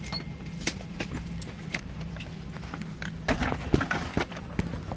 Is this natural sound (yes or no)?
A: no